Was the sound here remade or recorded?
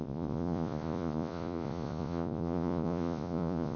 remade